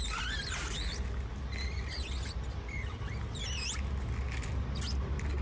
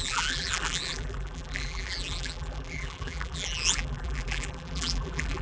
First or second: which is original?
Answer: first